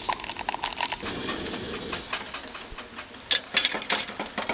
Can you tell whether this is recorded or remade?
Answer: recorded